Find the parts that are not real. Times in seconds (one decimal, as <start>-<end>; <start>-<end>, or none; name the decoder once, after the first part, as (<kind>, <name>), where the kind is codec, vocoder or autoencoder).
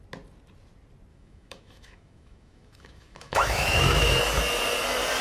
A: 1.1-4.2 (autoencoder, DAC-VAE)